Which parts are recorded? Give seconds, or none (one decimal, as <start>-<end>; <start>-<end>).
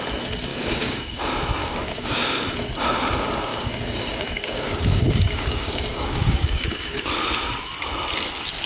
0.0-0.5; 1.2-1.6; 2.3-3.5; 7.1-8.7